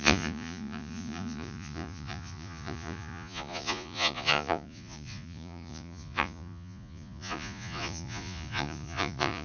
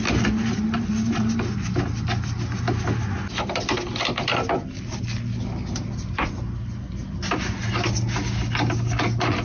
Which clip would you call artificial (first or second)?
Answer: first